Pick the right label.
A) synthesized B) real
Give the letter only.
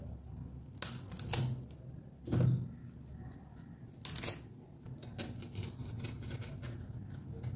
B